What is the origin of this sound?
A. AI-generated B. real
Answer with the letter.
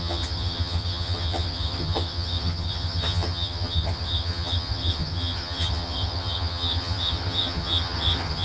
A